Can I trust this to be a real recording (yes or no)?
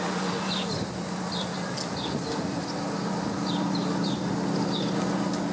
yes